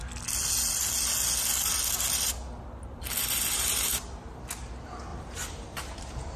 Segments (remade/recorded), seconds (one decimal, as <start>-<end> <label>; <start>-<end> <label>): 0.0-5.1 recorded; 5.1-6.4 remade